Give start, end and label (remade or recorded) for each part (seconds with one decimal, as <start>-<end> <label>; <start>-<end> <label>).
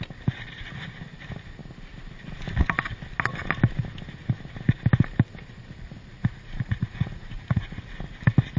0.0-6.2 recorded; 6.2-7.8 remade; 7.8-8.6 recorded